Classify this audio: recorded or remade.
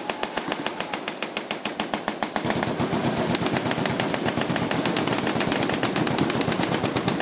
recorded